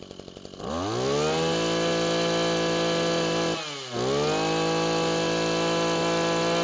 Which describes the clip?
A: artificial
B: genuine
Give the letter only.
B